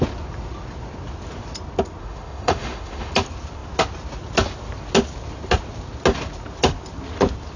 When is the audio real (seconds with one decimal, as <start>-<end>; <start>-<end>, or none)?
0.0-2.0; 3.1-7.6